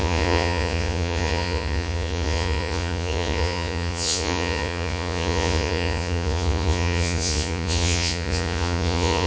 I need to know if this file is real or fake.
fake